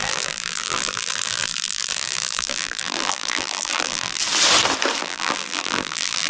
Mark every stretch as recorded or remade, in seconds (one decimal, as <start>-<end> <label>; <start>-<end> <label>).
0.0-4.2 remade; 4.2-5.0 recorded; 5.0-6.3 remade